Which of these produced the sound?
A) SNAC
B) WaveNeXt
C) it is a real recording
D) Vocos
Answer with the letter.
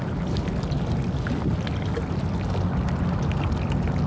C